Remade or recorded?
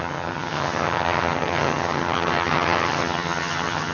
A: remade